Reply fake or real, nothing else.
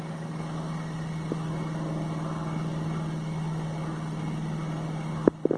real